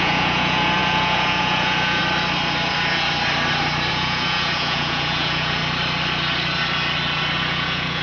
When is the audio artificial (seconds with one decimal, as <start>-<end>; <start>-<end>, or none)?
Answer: 0.0-2.0; 3.9-5.6; 7.4-8.0